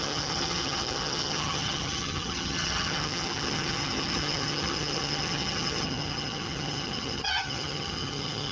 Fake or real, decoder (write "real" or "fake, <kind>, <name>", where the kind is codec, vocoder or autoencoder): fake, vocoder, HiFi-GAN